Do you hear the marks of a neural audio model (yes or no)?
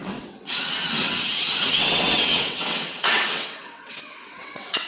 yes